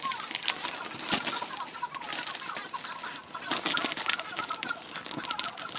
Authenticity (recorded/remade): recorded